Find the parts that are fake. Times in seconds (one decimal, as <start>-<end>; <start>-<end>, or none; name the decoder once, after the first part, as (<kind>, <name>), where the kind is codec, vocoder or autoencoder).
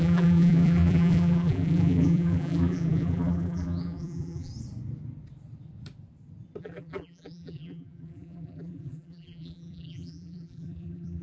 0.0-4.5 (vocoder, BigVGAN v2); 6.6-11.2